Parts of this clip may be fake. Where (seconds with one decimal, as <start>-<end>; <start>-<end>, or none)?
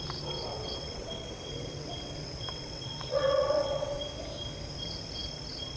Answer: 0.5-4.0